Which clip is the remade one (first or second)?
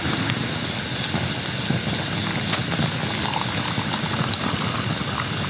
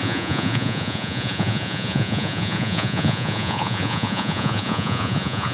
second